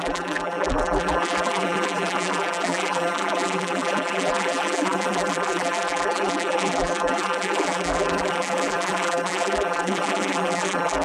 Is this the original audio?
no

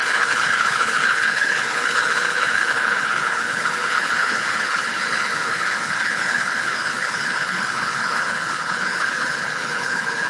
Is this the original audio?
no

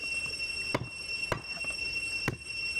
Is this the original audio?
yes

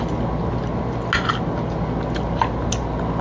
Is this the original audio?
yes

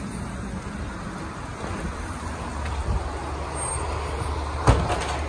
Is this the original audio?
yes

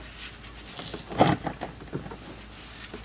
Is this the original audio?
yes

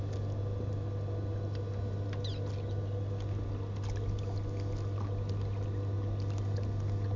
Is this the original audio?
yes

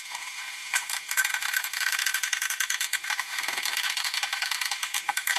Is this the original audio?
no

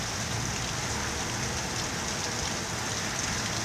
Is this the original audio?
yes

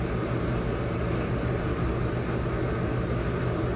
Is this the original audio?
yes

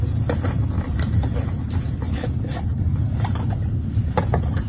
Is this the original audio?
yes